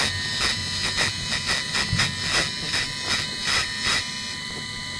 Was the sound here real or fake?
real